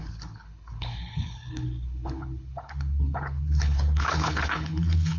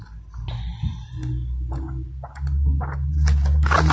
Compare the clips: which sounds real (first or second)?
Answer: second